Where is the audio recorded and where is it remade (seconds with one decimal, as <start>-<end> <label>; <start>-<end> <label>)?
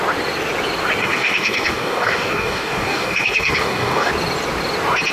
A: 0.0-1.0 recorded; 1.0-4.1 remade; 4.1-5.1 recorded